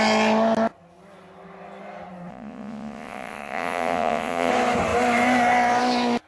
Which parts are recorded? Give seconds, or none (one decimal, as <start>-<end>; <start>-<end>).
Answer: 0.0-2.3; 4.5-6.3